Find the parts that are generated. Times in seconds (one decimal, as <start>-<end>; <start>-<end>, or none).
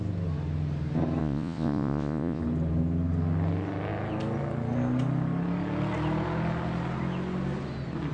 1.2-2.4